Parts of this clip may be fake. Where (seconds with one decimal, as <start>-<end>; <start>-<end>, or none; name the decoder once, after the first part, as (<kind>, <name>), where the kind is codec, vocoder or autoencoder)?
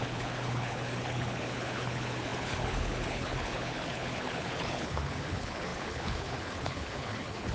0.0-7.5 (codec, HILCodec)